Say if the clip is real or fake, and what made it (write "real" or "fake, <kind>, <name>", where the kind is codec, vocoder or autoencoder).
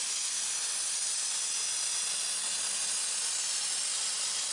real